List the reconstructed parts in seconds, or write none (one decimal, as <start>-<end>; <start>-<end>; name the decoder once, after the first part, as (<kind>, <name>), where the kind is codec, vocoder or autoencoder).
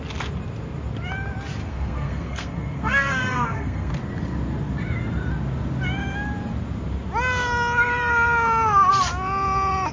1.6-3.9 (codec, SNAC)